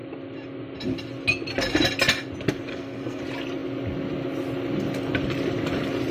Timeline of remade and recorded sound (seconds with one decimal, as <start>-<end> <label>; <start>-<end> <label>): 0.0-2.7 recorded; 2.7-3.2 remade; 3.2-6.1 recorded